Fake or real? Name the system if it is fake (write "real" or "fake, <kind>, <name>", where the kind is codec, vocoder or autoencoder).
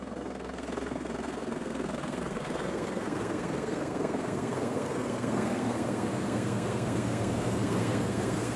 fake, codec, SNAC